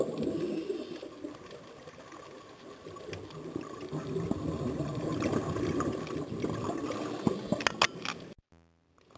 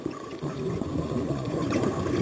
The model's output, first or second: second